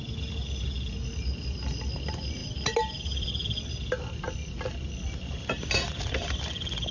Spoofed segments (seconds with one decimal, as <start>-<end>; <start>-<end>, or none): none

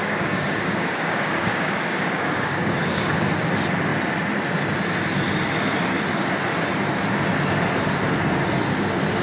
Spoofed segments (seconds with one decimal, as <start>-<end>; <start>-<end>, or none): 0.0-3.3

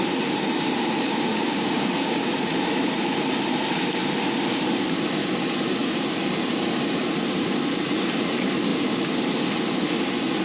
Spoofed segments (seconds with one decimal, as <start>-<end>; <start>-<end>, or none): 1.3-2.3

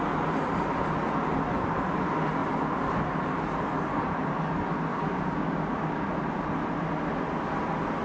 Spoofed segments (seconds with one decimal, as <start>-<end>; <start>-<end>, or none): 4.9-6.0

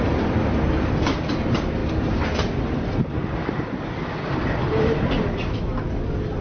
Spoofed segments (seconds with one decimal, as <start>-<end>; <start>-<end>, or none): none

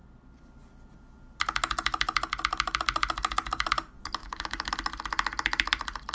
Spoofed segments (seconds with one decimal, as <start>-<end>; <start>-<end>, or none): 4.2-4.7